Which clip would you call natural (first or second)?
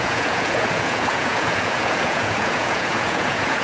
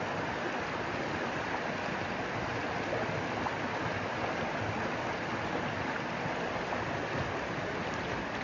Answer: second